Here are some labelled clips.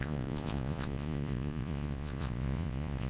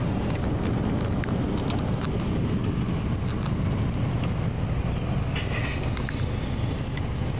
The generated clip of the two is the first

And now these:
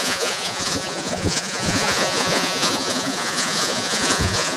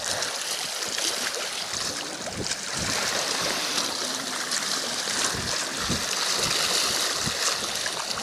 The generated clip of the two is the first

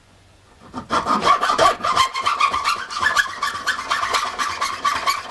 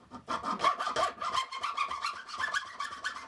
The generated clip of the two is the first